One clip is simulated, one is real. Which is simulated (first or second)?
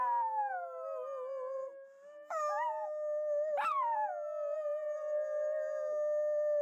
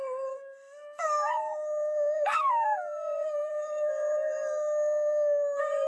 second